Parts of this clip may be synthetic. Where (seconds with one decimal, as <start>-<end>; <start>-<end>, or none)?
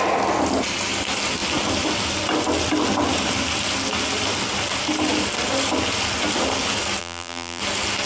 7.0-7.6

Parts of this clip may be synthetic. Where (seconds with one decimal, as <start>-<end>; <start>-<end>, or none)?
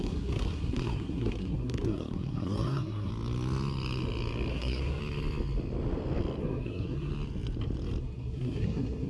0.0-3.1; 4.5-5.0; 6.4-7.1; 8.0-9.1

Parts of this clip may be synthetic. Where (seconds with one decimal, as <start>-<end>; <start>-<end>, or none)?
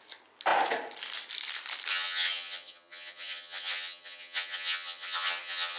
1.9-5.8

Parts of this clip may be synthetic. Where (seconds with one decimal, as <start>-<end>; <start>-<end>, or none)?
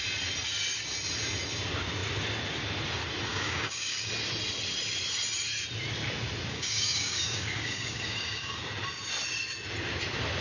3.3-4.1; 6.5-8.6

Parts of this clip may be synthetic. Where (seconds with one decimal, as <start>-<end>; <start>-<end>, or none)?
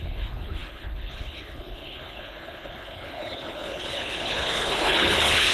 0.0-5.5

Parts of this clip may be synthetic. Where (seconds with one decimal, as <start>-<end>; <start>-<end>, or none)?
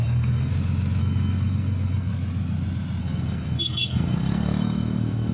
0.0-0.5; 1.0-2.1; 3.0-5.3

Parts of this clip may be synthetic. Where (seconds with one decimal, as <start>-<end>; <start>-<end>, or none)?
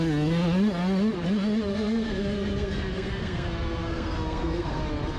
1.7-4.8